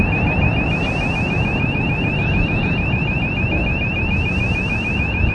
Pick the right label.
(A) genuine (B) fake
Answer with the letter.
A